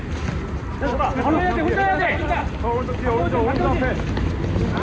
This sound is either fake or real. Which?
real